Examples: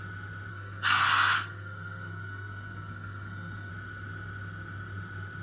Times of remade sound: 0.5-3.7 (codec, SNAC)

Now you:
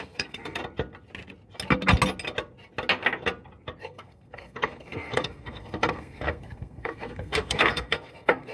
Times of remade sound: 0.0-0.6 (codec, SNAC); 3.8-8.5